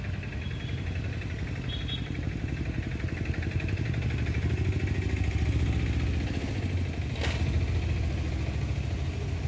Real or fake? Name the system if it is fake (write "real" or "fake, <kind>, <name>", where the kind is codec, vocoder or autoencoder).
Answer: real